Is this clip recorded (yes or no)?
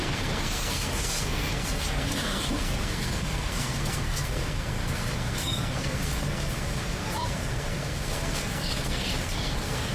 no